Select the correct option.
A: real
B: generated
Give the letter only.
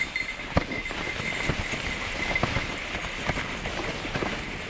A